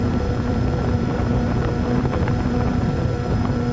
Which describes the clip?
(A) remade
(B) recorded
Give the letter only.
A